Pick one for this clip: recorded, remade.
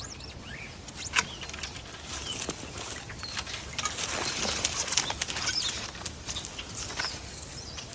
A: recorded